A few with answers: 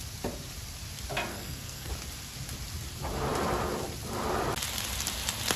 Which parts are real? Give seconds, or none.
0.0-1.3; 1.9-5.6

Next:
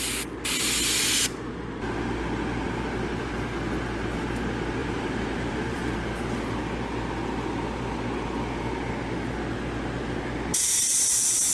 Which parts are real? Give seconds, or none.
0.0-4.8; 5.9-10.5; 11.1-11.5

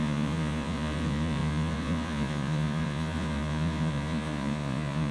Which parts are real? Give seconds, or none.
none